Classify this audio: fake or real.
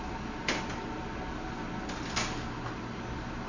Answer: real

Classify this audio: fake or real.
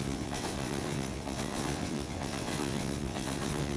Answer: fake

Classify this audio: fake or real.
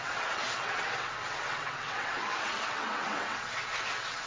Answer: fake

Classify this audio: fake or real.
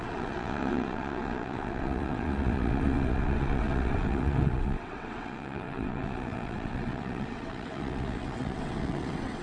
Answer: fake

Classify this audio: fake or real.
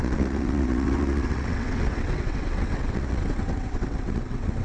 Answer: fake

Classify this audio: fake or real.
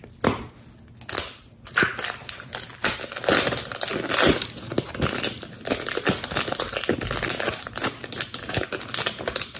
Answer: real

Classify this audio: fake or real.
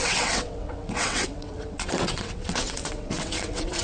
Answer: fake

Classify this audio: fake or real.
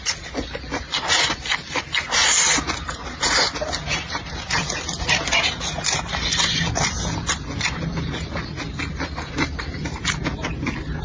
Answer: real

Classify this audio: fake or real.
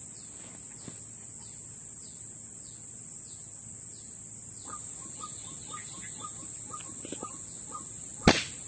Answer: real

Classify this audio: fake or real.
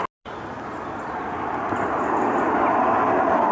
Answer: real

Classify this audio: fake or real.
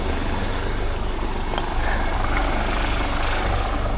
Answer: real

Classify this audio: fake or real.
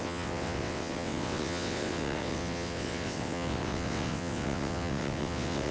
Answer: fake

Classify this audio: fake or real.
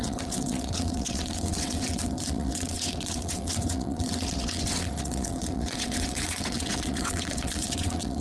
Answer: fake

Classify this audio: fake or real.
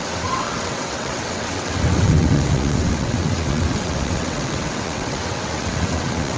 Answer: fake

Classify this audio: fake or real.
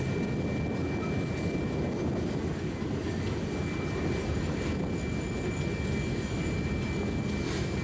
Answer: real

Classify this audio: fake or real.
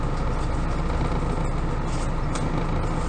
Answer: real